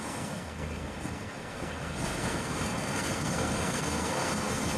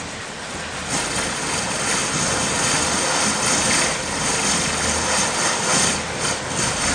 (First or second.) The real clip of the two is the second